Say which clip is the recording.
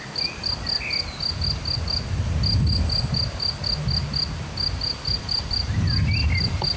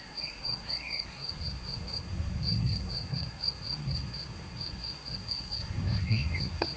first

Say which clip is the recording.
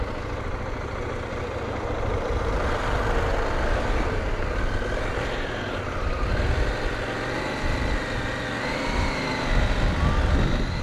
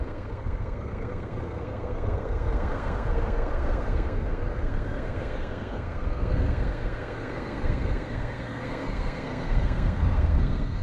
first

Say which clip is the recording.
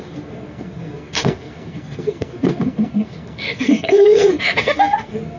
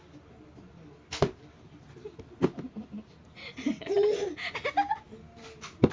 second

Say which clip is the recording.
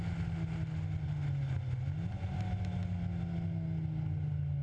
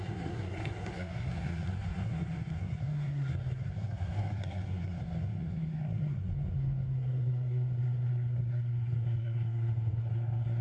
first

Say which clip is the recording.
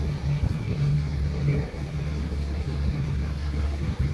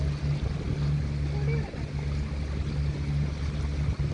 second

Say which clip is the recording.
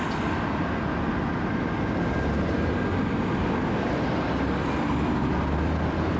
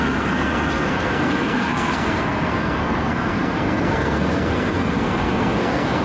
first